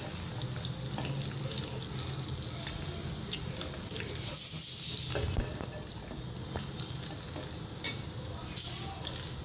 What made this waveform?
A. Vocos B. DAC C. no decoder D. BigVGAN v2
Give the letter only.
C